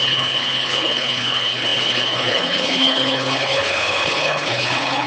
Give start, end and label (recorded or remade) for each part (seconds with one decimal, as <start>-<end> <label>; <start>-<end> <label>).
0.0-5.1 remade